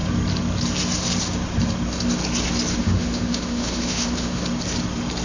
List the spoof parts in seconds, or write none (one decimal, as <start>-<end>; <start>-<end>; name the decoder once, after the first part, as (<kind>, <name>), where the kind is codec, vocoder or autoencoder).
2.8-4.4 (autoencoder, DAC-VAE)